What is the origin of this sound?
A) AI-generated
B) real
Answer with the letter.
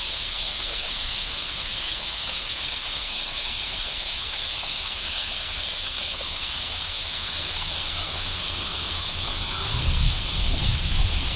A